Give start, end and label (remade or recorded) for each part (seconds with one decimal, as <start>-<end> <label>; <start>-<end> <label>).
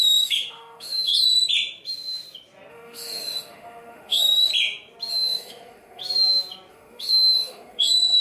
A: 0.0-1.1 remade; 1.1-2.7 recorded; 2.7-4.5 remade; 4.5-5.1 recorded; 5.1-6.0 remade; 6.0-6.7 recorded; 6.7-8.2 remade